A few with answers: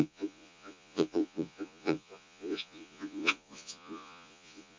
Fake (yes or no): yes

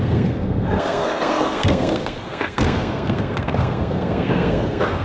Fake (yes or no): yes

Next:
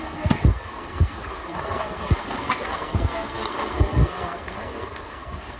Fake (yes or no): yes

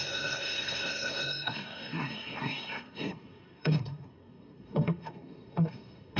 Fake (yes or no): yes